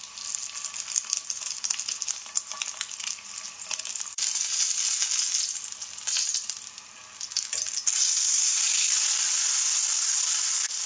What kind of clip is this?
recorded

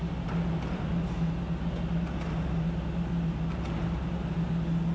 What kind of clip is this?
recorded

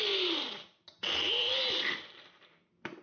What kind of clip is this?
recorded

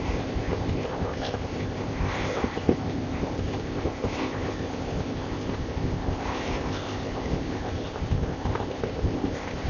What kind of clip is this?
remade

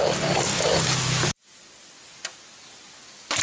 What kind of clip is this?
recorded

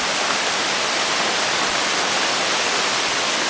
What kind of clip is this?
recorded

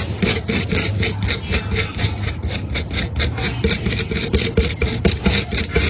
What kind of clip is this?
recorded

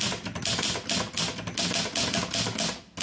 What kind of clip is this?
recorded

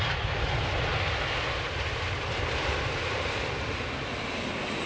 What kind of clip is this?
recorded